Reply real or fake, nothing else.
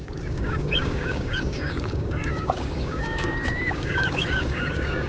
fake